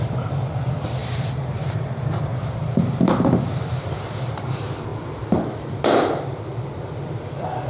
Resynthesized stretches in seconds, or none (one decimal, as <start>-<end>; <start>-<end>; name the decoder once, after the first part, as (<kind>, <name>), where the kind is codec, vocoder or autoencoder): 0.0-7.7 (vocoder, BigVGAN v2)